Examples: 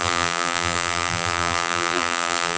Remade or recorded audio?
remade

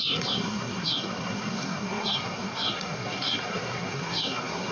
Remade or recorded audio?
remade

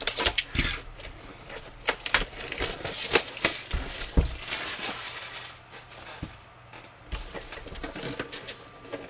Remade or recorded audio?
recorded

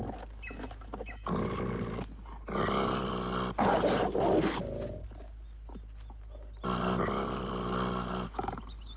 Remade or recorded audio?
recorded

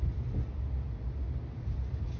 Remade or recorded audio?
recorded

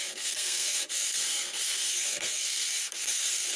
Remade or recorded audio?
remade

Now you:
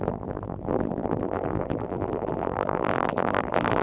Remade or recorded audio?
remade